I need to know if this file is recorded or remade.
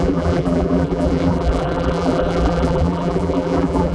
remade